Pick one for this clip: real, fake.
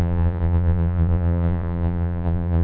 fake